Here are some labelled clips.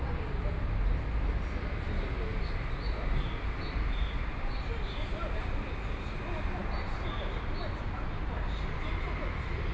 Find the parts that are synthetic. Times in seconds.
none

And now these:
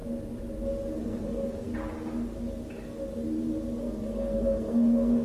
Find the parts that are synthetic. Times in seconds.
1.0-1.7 (codec, SNAC); 3.8-5.2

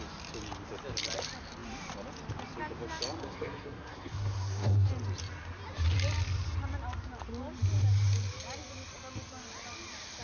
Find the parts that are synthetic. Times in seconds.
3.2-4.9 (codec, SNAC)

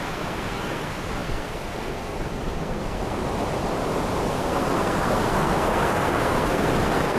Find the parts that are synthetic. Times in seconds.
0.0-3.2 (codec, SNAC); 4.2-7.2

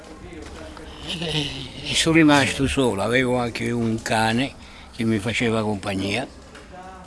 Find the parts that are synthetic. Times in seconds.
1.6-2.7 (codec, SNAC); 4.9-5.4

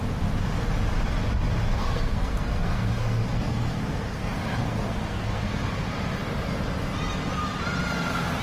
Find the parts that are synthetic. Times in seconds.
1.7-5.7 (codec, SNAC)

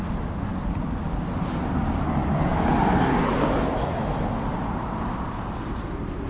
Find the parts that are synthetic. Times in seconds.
none

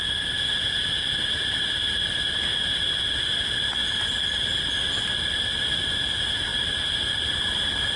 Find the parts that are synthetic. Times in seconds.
none